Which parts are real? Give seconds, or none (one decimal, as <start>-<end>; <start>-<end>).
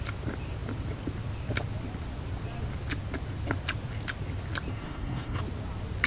0.0-4.7; 5.4-6.1